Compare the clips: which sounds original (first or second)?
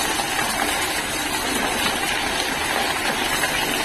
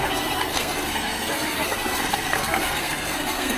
first